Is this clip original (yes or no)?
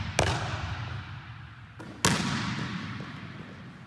yes